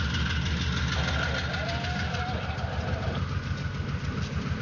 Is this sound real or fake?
real